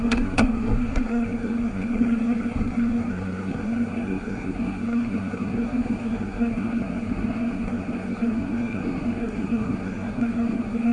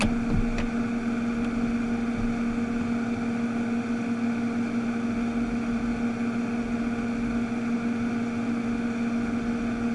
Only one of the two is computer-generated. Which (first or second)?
first